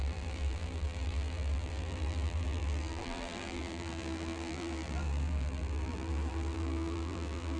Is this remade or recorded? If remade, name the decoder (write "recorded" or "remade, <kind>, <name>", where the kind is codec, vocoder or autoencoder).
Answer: remade, vocoder, BigVGAN v2